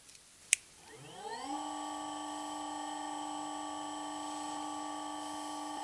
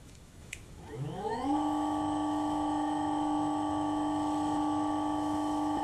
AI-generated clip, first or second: second